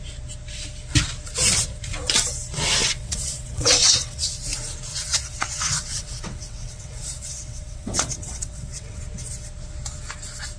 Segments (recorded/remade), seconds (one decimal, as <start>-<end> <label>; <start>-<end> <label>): 0.0-2.8 recorded; 2.8-4.3 remade; 4.3-4.9 recorded; 4.9-9.0 remade; 9.0-10.6 recorded